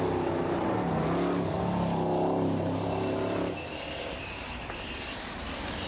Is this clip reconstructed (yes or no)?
no